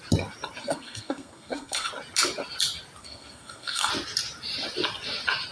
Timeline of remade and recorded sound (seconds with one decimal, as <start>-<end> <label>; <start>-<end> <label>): 0.0-0.6 recorded; 0.6-1.9 remade; 1.9-3.0 recorded; 3.0-3.9 remade; 3.9-5.5 recorded